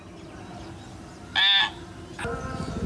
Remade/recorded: recorded